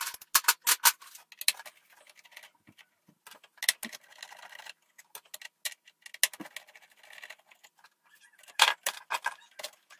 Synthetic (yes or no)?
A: no